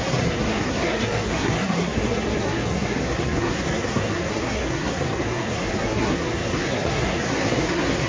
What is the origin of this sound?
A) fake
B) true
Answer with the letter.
A